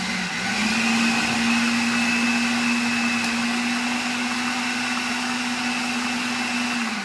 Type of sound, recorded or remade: recorded